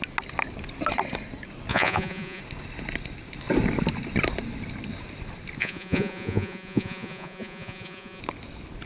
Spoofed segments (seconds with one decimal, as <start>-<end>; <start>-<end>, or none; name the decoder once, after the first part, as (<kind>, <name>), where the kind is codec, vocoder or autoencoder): 1.7-2.4 (vocoder, Vocos); 5.6-8.2